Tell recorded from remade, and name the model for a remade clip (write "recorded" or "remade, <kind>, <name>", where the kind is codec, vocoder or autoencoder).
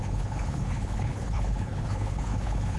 remade, codec, HILCodec